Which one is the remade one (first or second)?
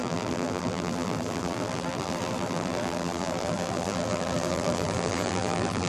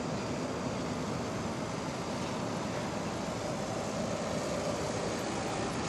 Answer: first